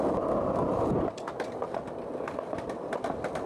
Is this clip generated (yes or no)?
no